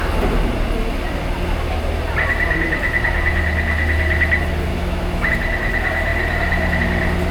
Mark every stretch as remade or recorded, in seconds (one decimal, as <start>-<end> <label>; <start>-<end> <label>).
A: 0.0-4.7 recorded; 4.7-5.3 remade; 5.3-7.3 recorded